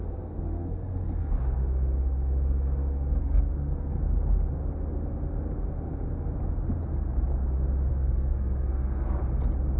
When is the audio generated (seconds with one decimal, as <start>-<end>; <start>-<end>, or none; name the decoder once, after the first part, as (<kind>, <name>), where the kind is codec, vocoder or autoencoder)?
0.0-1.3 (codec, SNAC); 3.2-4.0; 7.9-9.2